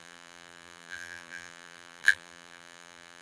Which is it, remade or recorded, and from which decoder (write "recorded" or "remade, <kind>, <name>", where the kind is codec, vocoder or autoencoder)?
remade, vocoder, BigVGAN v2